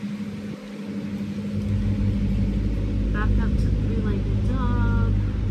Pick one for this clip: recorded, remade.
recorded